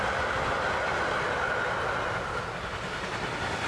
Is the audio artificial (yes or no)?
no